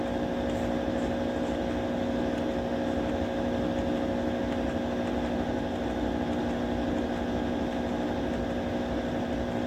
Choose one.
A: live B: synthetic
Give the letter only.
A